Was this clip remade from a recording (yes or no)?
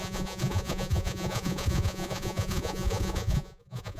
yes